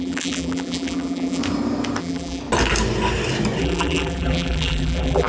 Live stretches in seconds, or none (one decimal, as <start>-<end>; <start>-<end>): 1.4-2.0; 2.4-3.6